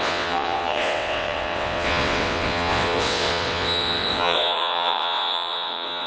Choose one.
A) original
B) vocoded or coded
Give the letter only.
B